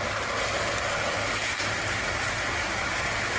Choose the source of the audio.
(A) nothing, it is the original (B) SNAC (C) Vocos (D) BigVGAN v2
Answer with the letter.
A